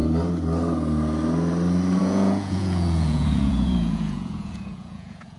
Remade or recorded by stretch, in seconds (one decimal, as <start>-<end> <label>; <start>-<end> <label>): 0.0-2.0 recorded; 2.0-5.4 remade